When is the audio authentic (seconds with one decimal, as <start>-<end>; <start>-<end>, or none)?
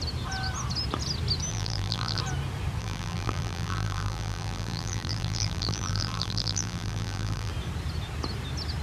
0.0-1.5; 2.2-2.8; 7.5-8.8